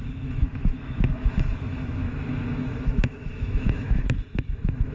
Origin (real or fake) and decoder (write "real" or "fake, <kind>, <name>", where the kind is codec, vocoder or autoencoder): fake, autoencoder, DAC-VAE